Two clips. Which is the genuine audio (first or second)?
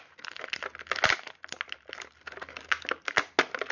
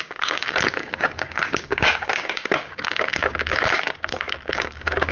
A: first